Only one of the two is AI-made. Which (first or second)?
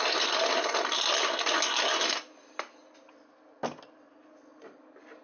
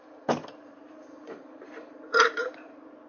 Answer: second